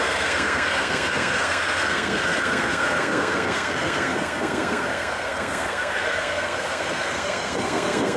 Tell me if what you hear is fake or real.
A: fake